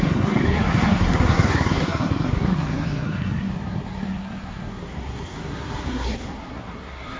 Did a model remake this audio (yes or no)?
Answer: yes